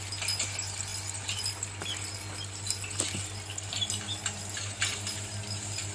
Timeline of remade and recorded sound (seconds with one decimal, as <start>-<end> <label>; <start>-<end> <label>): 0.0-5.9 recorded